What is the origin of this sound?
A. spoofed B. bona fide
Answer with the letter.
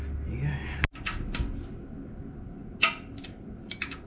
B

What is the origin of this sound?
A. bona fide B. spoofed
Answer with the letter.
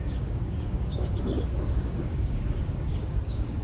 B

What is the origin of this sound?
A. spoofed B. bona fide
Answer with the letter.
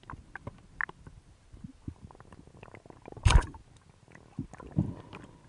B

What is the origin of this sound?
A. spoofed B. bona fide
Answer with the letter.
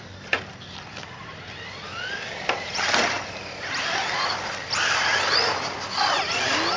B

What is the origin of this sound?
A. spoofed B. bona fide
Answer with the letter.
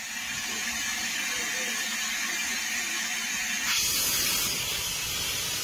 B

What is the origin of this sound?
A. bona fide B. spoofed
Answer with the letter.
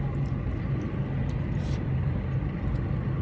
A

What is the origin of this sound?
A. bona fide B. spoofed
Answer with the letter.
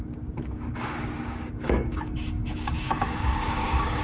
B